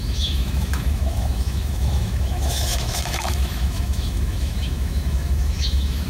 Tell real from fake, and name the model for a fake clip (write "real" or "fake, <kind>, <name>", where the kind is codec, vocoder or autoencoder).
fake, autoencoder, DAC-VAE